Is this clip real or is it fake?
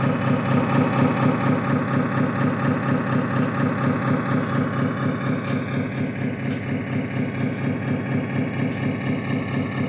real